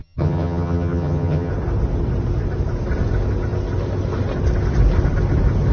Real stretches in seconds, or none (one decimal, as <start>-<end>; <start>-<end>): 1.5-5.7